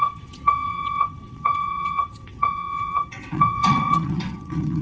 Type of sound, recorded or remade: remade